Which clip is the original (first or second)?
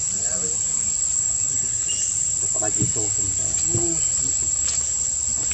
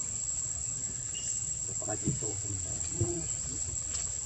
first